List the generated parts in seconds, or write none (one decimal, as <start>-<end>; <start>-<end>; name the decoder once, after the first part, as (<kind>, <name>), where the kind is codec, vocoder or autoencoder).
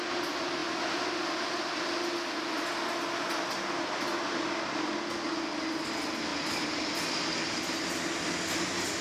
6.3-7.9 (vocoder, BigVGAN v2)